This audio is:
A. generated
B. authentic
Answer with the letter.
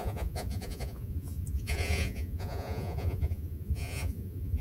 A